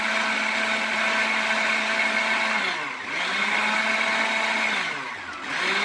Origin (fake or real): real